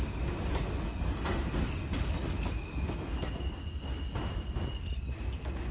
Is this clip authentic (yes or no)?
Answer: yes